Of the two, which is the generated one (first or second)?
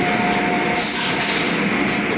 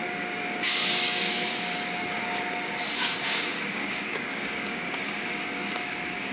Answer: second